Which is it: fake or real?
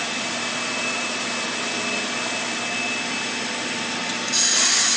real